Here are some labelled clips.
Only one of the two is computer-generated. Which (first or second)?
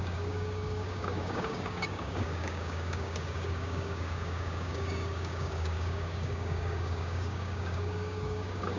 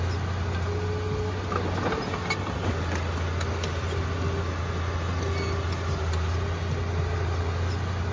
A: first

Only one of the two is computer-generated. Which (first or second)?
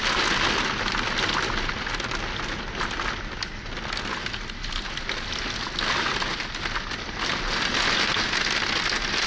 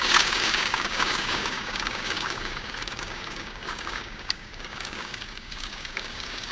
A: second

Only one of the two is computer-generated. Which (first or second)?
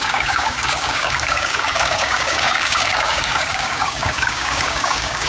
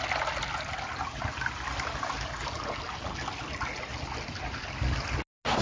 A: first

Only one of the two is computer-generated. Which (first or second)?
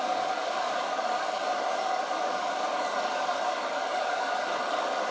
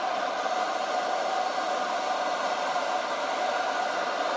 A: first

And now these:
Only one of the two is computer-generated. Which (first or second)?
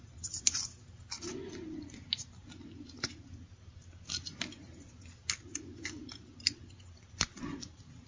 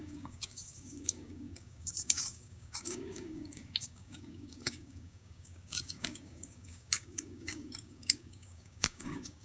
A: second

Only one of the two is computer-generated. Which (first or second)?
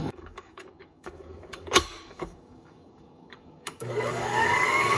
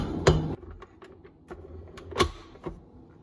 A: first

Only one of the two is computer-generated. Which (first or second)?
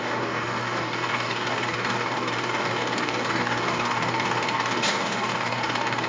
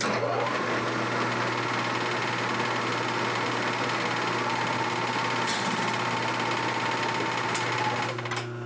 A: first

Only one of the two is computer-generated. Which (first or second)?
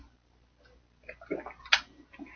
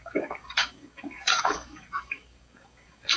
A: second